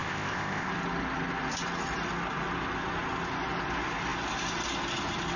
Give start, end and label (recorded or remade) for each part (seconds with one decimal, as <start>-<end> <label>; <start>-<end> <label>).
0.0-0.7 remade; 0.7-5.4 recorded